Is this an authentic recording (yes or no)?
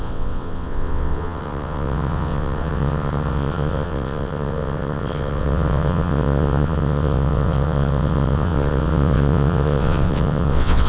no